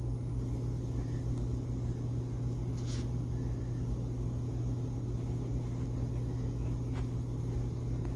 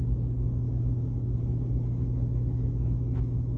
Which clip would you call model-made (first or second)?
second